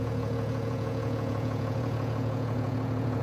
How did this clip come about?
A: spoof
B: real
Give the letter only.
A